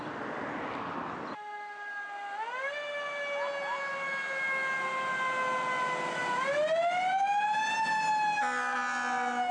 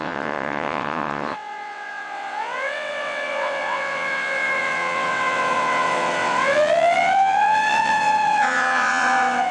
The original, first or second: first